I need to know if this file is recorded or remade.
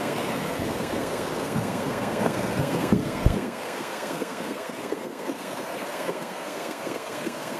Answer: remade